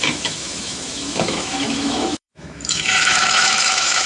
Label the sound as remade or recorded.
remade